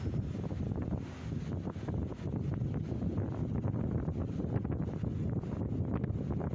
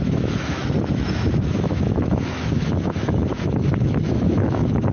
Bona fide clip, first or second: first